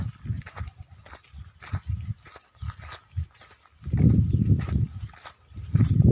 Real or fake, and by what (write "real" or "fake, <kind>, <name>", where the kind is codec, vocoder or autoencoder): real